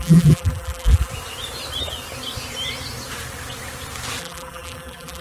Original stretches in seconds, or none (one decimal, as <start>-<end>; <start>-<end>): 1.1-4.2